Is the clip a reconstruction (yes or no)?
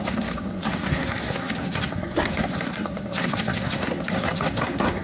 yes